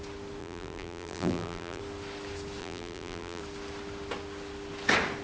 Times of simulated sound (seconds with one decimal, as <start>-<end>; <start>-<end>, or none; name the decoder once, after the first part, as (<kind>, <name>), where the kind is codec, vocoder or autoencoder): 0.4-1.8 (vocoder, BigVGAN v2); 2.6-3.4